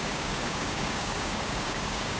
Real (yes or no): no